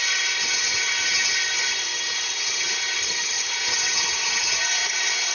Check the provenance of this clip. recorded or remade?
remade